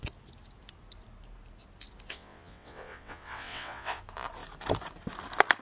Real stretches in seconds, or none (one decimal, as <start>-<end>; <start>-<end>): 0.0-2.1; 4.0-5.6